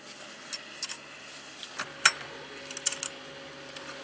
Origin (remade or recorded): recorded